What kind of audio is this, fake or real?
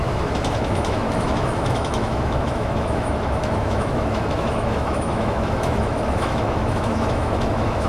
fake